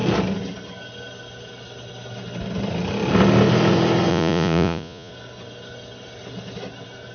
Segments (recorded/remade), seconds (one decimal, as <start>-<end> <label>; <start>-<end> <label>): 0.0-4.1 recorded; 4.1-5.1 remade; 5.1-7.1 recorded